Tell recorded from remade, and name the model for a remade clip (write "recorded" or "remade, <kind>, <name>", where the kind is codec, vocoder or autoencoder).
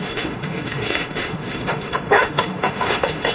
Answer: remade, autoencoder, DAC-VAE